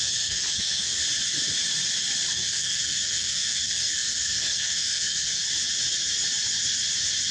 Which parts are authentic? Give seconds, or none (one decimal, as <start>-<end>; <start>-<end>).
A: 1.0-2.3; 5.4-7.3